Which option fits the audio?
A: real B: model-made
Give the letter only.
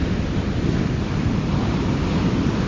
A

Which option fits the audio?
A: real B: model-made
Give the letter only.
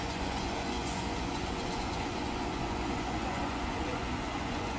B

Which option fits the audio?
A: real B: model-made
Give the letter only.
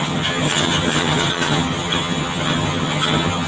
B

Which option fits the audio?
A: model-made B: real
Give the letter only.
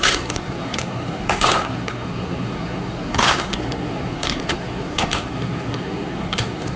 A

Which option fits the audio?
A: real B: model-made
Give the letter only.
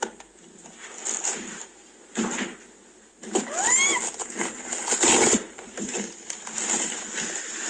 A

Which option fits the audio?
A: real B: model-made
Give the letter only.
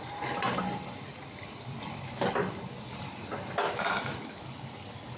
A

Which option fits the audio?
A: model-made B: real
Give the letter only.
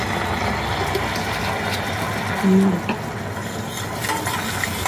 B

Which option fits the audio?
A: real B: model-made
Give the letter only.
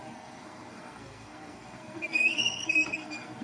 B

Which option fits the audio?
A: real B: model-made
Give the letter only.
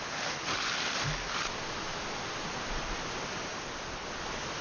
A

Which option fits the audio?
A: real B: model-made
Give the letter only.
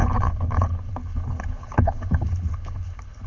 B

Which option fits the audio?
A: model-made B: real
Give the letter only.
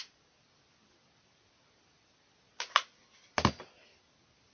B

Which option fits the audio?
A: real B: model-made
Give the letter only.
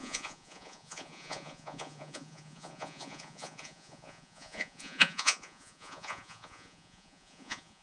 B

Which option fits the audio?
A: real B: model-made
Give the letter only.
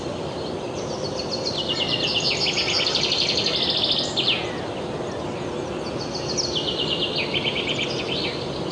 A